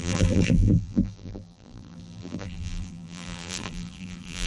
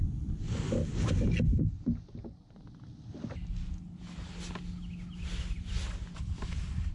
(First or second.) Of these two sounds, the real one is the second